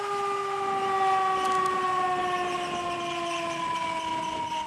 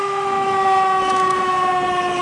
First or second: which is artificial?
second